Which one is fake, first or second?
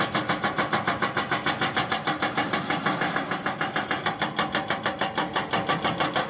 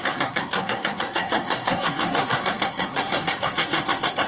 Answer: second